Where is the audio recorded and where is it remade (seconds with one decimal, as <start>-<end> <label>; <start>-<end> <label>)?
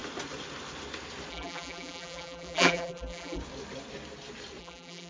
0.0-1.3 recorded; 1.3-3.4 remade; 3.4-4.6 recorded; 4.6-5.1 remade